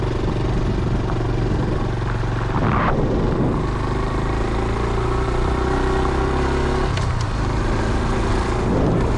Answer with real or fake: real